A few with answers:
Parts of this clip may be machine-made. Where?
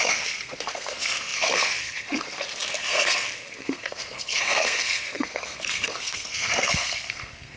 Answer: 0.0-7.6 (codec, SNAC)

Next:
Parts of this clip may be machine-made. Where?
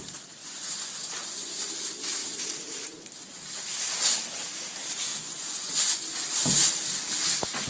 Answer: 0.4-1.6 (vocoder, Vocos); 5.1-6.0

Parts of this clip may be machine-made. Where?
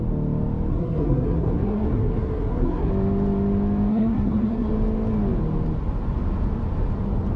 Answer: 0.7-2.9 (codec, SNAC); 3.9-4.7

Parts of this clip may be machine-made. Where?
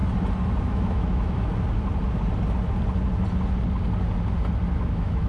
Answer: 0.6-1.5 (autoencoder, DAC-VAE); 4.7-5.3